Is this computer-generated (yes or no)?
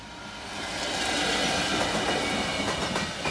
no